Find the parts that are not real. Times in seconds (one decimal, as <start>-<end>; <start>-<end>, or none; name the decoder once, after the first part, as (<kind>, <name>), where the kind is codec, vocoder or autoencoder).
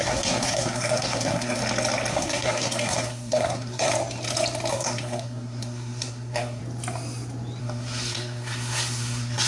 0.0-1.6 (codec, SNAC); 2.1-3.9; 4.7-6.6; 7.6-9.5